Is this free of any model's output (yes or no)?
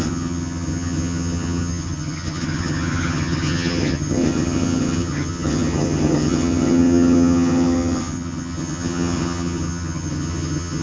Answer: no